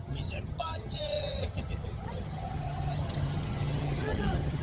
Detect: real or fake fake